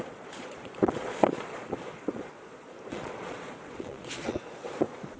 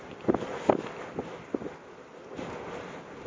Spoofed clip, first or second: first